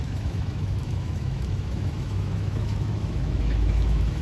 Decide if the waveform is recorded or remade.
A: remade